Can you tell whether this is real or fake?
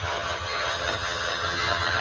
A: fake